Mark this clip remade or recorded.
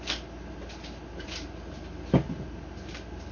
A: recorded